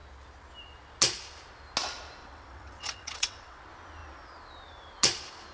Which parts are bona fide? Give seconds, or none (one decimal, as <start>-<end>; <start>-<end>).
0.0-2.2; 3.6-5.5